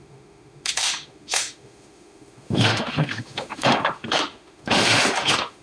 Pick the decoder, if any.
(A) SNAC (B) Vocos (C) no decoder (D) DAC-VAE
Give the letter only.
D